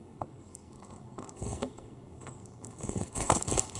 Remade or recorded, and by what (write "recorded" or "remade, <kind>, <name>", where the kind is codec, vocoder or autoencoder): remade, codec, SNAC